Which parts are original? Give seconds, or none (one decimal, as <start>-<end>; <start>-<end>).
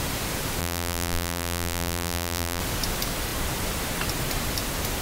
0.0-0.6; 2.6-5.0